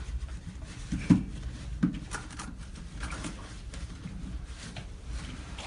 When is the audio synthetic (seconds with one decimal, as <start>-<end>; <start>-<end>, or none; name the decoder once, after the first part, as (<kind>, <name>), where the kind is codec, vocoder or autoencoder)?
2.2-5.7 (vocoder, BigVGAN v2)